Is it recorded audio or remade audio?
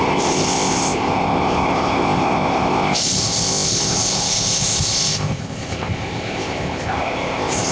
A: remade